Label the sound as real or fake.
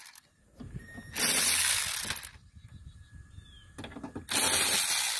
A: real